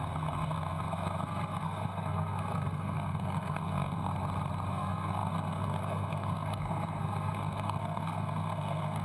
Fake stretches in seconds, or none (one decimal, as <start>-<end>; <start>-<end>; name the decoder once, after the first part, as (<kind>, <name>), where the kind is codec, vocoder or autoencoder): 0.0-4.1 (codec, SNAC); 4.7-9.0